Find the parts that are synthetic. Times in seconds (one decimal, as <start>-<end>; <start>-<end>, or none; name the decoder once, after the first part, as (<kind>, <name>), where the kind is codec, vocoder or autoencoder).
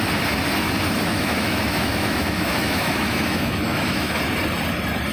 1.1-4.2 (autoencoder, DAC-VAE)